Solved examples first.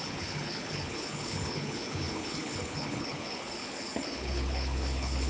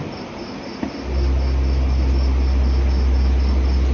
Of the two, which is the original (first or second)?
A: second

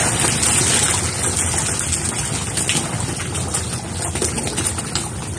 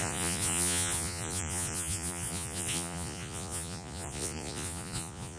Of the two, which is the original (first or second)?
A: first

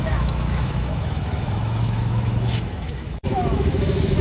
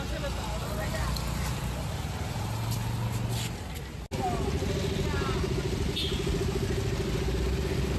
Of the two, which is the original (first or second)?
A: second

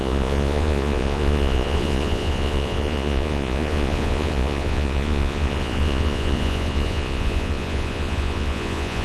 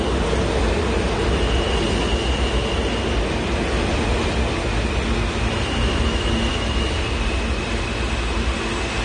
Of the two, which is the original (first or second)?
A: second